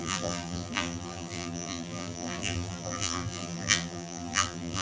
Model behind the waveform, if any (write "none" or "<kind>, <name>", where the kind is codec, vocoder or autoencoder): vocoder, BigVGAN v2